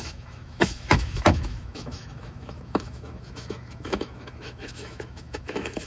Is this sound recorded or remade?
remade